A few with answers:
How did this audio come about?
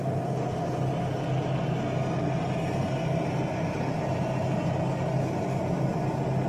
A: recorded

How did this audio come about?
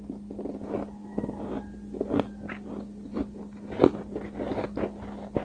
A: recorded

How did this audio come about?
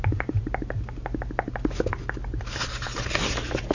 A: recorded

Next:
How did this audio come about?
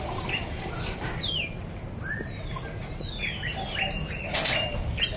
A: recorded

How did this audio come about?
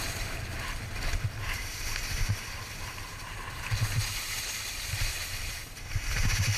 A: recorded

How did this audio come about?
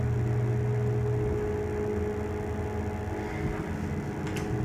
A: recorded